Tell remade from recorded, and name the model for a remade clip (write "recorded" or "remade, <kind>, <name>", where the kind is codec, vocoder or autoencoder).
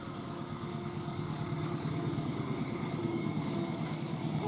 remade, codec, DAC